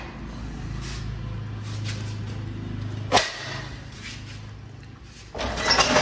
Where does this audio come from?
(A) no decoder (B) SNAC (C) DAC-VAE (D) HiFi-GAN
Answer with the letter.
A